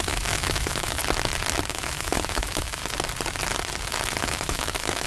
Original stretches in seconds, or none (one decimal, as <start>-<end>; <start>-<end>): 1.0-1.7; 2.8-4.2